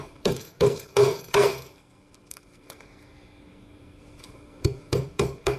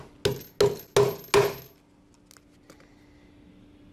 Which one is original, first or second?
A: second